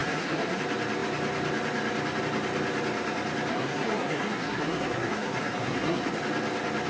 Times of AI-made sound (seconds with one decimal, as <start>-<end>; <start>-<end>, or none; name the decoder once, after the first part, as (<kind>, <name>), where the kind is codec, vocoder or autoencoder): 0.0-0.6 (codec, SNAC); 3.5-6.2